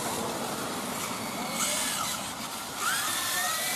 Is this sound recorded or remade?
recorded